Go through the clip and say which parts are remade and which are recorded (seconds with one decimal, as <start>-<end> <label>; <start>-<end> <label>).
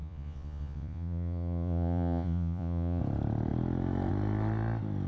0.0-3.0 remade; 3.0-5.1 recorded